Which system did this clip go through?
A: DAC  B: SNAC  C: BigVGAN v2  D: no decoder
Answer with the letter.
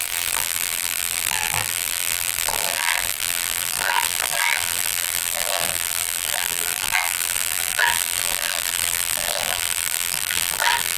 C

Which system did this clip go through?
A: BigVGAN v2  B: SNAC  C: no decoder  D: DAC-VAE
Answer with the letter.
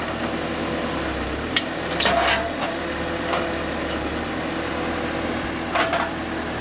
C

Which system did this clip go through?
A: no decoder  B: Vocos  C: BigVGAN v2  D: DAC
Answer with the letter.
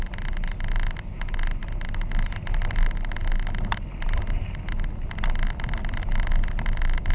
A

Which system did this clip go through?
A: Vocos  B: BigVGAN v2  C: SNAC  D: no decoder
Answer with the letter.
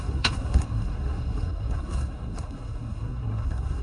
C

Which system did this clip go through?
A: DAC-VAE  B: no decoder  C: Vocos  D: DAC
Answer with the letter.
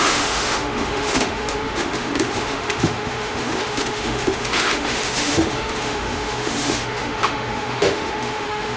A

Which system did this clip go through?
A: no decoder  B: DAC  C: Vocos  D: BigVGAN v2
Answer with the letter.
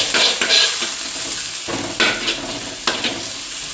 A